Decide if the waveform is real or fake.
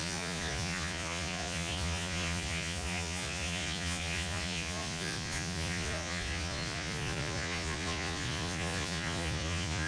fake